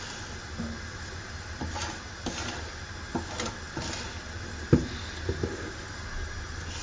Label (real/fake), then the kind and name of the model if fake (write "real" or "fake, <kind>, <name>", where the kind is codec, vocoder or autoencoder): real